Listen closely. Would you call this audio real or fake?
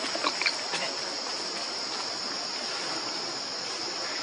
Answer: real